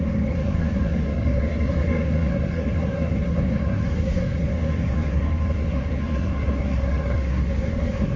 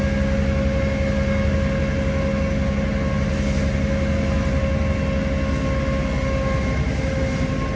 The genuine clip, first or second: second